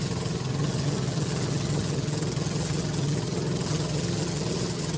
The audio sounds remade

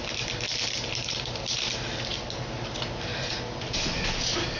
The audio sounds recorded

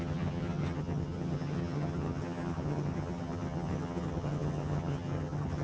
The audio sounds remade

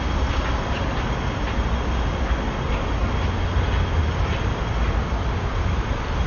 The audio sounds recorded